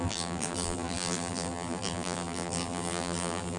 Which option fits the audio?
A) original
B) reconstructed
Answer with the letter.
B